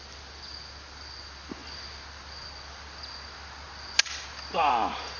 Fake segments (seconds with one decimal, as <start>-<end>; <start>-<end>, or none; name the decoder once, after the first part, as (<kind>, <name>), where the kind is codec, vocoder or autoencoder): none